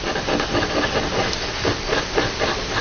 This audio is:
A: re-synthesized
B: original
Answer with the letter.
B